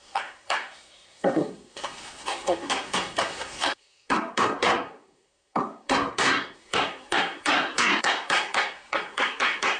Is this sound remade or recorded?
remade